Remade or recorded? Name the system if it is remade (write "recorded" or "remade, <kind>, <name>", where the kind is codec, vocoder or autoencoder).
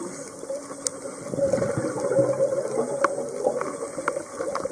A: recorded